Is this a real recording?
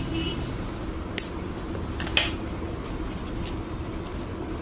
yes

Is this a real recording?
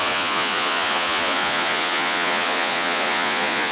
no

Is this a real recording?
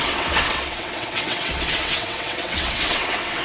no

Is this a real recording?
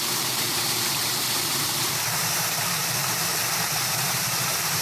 no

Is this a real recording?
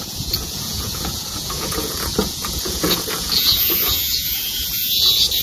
no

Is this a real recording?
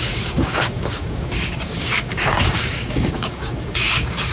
no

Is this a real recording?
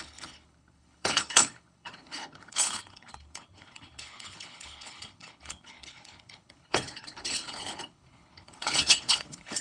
no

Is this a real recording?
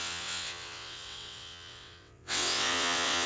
no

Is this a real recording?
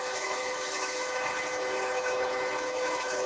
no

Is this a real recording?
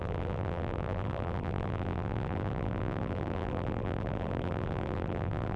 no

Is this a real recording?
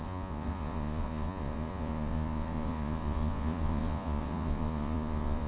no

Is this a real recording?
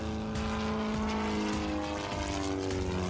yes